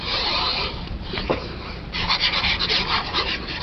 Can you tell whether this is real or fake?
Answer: fake